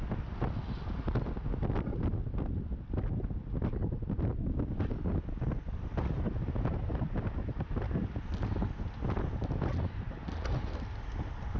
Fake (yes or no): no